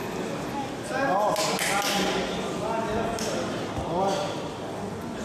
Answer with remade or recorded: recorded